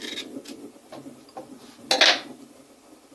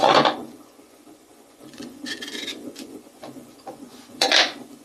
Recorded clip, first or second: first